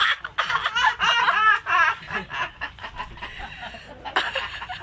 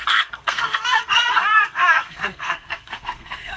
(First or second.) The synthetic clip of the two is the second